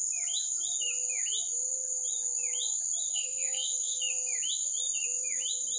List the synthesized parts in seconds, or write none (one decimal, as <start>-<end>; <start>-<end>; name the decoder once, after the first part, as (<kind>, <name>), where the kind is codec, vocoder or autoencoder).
3.1-4.0 (codec, SNAC)